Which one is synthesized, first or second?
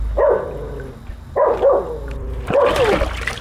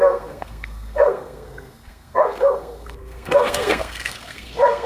second